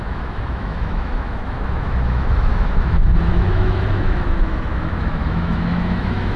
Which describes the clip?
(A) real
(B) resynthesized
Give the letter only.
B